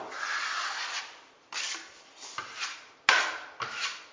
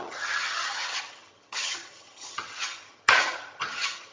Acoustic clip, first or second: first